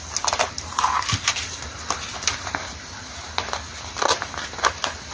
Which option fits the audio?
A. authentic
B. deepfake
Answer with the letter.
A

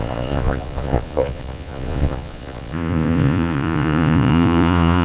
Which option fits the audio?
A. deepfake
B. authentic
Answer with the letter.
A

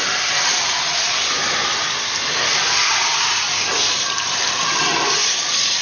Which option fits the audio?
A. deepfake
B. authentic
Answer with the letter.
B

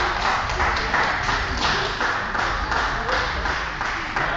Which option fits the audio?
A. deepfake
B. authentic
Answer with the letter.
B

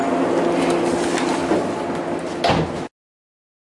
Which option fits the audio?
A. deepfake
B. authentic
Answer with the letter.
B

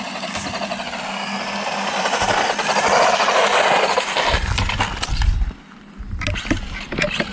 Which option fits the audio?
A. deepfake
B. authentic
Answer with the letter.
B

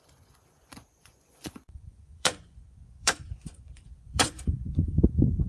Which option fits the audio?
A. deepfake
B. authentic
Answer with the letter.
A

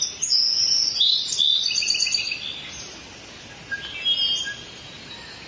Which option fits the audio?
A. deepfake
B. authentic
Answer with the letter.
B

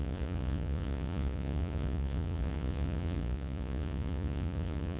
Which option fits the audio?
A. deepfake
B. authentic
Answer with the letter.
A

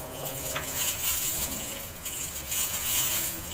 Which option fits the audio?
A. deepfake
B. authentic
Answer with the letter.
A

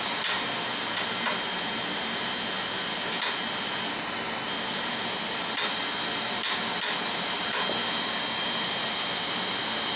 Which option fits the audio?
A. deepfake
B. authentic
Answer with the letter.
B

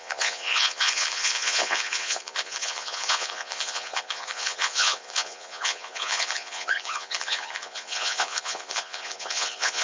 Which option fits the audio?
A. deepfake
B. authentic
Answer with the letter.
A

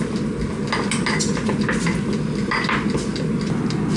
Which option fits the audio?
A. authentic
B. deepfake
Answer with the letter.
A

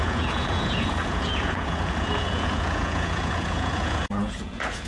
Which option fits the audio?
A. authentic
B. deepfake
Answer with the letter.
B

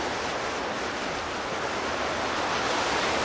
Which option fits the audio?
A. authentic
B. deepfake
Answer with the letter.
A